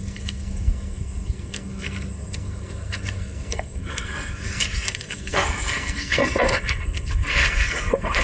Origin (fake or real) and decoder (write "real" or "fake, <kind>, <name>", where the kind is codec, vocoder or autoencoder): fake, codec, SNAC